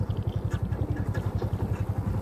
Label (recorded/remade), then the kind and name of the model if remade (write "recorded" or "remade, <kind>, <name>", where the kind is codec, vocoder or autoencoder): recorded